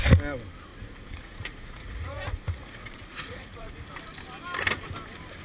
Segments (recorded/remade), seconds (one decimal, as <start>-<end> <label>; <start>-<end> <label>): 0.0-0.7 recorded; 0.7-3.9 remade; 3.9-5.4 recorded